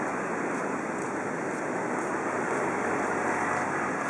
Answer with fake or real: real